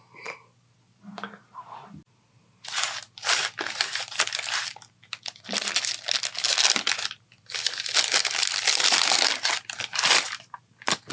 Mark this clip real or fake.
real